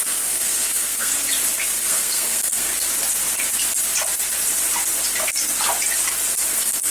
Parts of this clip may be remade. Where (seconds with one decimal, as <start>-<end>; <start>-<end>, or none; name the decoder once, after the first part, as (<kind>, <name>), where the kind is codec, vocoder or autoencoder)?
0.0-1.1 (codec, SNAC); 1.6-2.7; 6.5-6.9